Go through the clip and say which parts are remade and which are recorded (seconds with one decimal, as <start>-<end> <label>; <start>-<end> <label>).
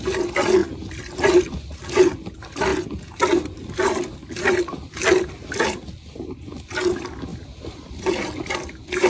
0.0-0.6 recorded; 0.6-2.0 remade; 2.0-7.3 recorded; 7.3-8.1 remade; 8.1-9.1 recorded